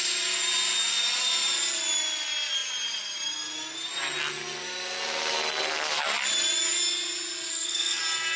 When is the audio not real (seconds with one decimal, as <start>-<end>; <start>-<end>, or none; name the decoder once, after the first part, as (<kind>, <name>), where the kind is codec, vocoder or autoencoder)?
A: 7.5-8.0 (codec, SNAC)